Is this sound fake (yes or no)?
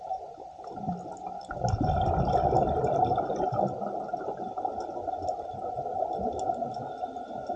no